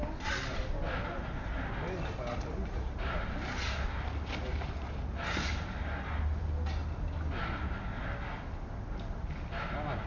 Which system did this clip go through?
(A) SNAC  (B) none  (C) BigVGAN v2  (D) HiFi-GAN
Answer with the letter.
B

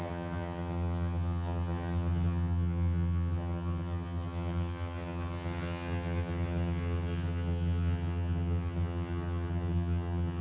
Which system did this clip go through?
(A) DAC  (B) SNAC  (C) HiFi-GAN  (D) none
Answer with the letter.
C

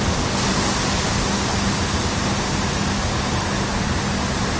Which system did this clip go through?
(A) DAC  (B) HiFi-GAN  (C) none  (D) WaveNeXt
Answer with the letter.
C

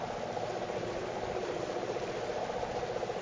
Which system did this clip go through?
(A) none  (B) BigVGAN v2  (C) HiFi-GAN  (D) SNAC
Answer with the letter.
A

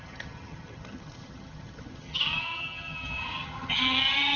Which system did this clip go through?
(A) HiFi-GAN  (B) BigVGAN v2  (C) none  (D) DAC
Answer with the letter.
A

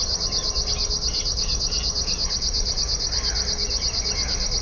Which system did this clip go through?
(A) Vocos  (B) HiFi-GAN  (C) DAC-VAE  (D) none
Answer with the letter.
D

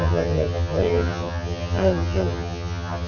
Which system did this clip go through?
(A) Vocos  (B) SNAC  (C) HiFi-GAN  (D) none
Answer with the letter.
C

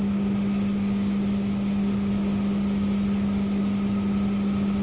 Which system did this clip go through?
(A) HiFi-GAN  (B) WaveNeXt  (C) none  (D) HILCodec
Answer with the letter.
C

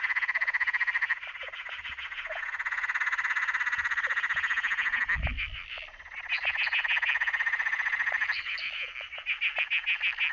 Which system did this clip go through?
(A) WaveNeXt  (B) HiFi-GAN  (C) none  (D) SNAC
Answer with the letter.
C